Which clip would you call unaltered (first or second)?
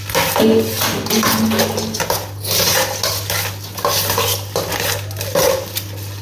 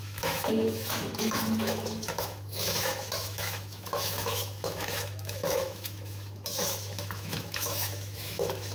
first